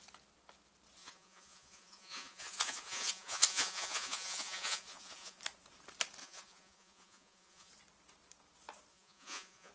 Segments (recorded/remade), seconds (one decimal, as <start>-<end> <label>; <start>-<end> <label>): 0.0-1.0 recorded; 1.0-5.4 remade; 5.4-6.2 recorded; 6.2-7.7 remade; 7.7-8.9 recorded; 8.9-9.7 remade